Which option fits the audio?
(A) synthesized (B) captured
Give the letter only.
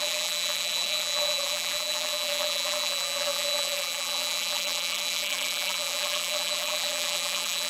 A